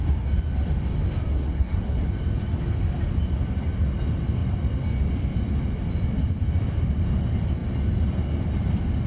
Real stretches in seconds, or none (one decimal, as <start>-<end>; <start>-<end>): 0.0-1.3; 2.1-9.1